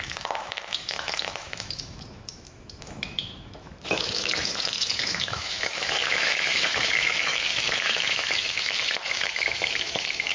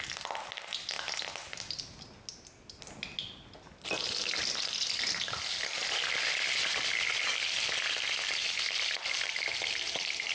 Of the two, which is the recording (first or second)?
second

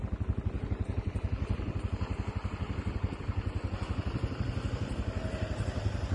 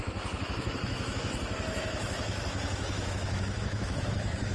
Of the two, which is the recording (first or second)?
first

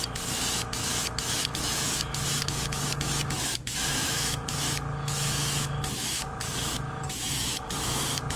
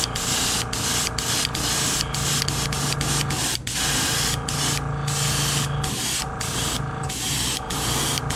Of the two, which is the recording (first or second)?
second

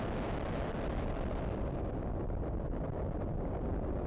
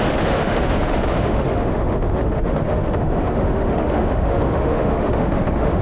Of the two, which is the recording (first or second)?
first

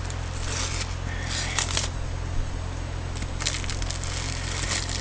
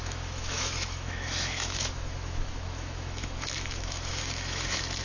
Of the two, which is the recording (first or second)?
first